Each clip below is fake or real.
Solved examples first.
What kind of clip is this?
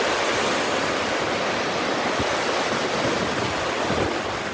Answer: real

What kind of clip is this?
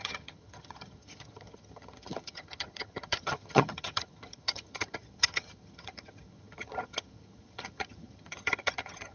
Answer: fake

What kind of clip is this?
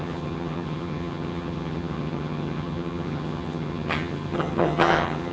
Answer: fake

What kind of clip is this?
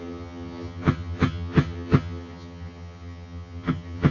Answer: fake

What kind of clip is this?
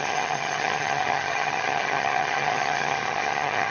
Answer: fake